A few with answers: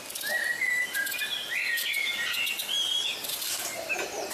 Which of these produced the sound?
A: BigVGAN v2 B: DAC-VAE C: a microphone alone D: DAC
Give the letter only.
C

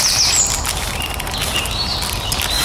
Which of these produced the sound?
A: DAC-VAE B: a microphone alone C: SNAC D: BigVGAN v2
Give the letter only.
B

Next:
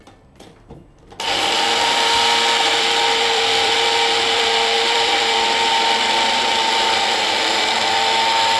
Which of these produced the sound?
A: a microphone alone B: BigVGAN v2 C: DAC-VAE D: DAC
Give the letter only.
B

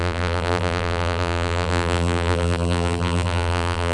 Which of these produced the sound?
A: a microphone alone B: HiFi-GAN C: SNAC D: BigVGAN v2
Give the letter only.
D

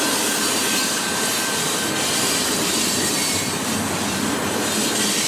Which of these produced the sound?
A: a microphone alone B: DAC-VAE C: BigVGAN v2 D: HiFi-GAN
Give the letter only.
C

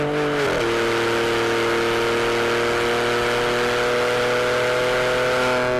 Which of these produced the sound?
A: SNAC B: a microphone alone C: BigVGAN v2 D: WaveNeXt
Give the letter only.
B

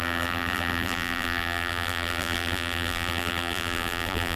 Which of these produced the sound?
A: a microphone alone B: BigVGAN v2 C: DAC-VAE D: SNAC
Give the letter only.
B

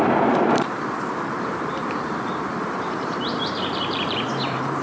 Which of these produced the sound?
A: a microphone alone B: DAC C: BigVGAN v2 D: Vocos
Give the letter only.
C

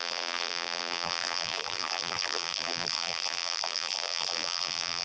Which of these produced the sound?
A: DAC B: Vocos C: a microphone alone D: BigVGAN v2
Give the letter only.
D